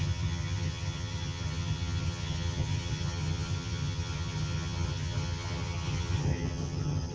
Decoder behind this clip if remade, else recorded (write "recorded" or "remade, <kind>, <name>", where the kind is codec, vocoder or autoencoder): remade, vocoder, HiFi-GAN